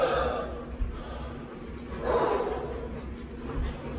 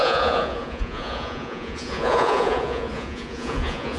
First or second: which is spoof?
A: second